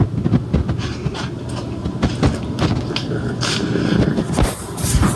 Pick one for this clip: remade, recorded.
recorded